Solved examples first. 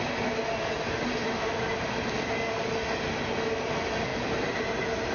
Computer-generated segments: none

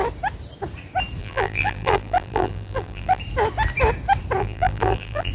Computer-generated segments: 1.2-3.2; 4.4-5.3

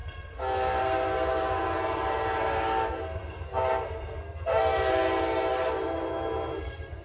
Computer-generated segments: 0.0-1.6; 2.4-4.9; 6.6-7.0

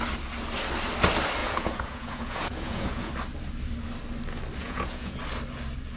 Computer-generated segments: 1.4-3.1; 4.6-5.2

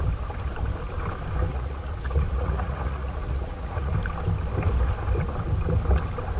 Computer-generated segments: 1.5-3.9

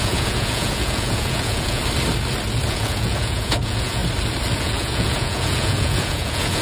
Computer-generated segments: 0.0-1.8; 2.7-4.0; 4.6-6.6

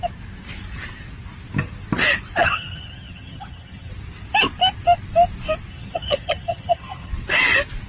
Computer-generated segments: 2.4-3.9; 5.7-7.1